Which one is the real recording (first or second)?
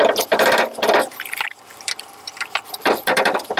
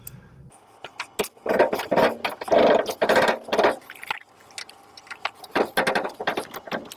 second